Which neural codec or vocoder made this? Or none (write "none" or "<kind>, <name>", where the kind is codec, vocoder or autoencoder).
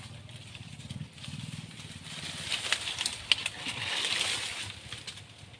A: none